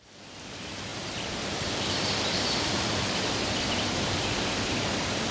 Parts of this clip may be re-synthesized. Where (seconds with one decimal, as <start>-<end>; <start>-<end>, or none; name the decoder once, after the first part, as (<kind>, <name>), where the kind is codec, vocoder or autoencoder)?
0.0-5.3 (vocoder, BigVGAN v2)